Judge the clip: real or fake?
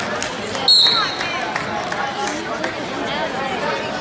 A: real